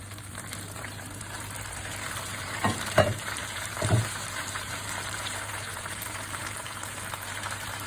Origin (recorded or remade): remade